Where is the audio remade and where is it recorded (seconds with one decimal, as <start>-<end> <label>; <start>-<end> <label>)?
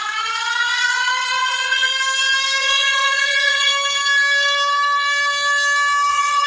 0.0-1.9 remade; 1.9-2.6 recorded; 2.6-3.7 remade; 3.7-6.1 recorded; 6.1-6.5 remade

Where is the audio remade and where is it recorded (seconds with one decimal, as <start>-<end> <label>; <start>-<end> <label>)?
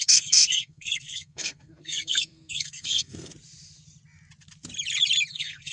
0.0-3.3 remade; 3.3-5.3 recorded; 5.3-5.7 remade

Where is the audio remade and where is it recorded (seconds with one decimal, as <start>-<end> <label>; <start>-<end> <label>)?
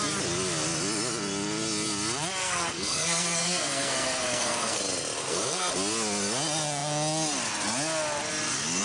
0.0-2.4 recorded; 2.4-4.8 remade; 4.8-5.2 recorded; 5.2-5.7 remade; 5.7-8.8 recorded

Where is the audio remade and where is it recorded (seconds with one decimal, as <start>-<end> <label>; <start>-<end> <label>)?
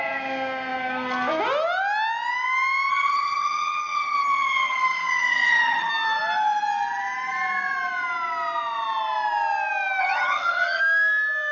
0.0-2.9 recorded; 2.9-5.9 remade; 5.9-10.0 recorded; 10.0-10.8 remade; 10.8-11.5 recorded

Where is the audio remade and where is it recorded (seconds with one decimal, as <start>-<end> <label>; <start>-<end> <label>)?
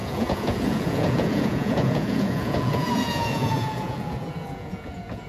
0.0-5.3 remade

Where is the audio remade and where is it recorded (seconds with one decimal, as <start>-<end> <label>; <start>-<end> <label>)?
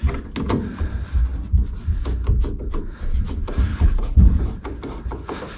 0.0-3.7 recorded; 3.7-4.4 remade; 4.4-5.6 recorded